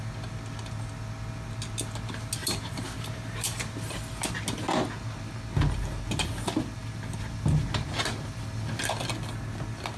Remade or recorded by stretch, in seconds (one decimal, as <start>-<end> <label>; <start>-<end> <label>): 0.0-2.4 recorded; 2.4-3.6 remade; 3.6-10.0 recorded

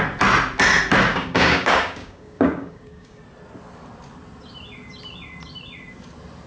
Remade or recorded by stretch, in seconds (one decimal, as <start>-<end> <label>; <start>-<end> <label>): 0.0-1.1 recorded; 1.1-3.2 remade; 3.2-6.5 recorded

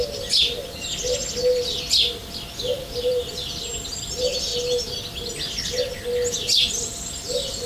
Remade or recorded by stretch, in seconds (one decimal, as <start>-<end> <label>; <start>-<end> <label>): 0.0-7.7 recorded

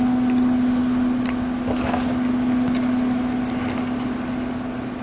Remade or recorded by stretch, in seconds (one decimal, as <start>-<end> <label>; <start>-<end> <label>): 0.0-5.0 recorded